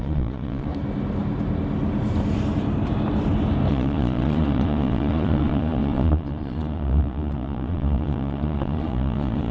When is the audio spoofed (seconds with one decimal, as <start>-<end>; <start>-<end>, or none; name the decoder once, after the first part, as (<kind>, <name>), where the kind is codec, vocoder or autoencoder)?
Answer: 0.0-0.7 (vocoder, Vocos); 3.7-9.5